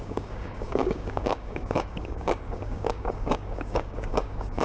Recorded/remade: remade